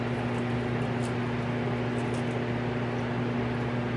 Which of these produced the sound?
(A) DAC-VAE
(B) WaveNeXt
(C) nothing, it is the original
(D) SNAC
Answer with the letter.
C